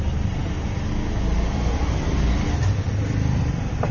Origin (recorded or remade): recorded